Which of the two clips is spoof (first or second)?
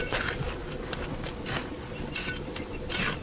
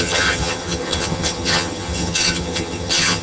second